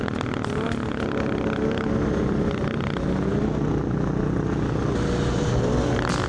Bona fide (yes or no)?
yes